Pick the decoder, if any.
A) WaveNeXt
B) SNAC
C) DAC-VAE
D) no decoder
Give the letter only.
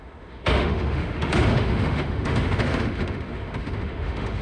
C